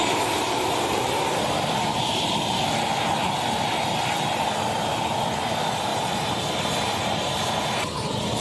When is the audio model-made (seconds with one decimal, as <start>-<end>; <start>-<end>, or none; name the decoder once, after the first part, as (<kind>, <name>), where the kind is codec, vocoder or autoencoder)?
5.9-7.7 (vocoder, BigVGAN v2)